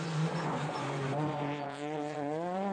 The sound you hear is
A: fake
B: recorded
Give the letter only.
A